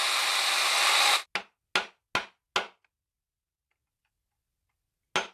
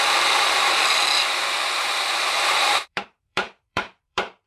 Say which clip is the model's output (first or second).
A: second